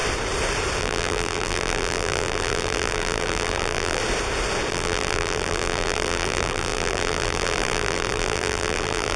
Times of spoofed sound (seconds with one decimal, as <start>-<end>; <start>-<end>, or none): 0.8-4.0; 4.7-9.2